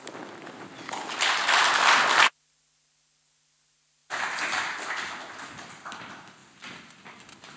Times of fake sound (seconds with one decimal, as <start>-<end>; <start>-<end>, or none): none